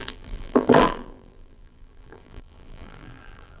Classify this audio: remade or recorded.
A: remade